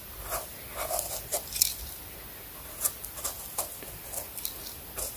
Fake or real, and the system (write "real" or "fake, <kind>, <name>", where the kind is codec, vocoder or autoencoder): real